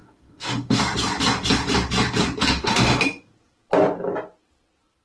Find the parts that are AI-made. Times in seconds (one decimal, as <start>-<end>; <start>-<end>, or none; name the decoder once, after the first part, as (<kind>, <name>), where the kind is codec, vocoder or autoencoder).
0.0-0.8 (autoencoder, DAC-VAE); 2.4-3.0